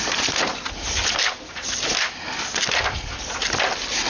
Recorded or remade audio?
recorded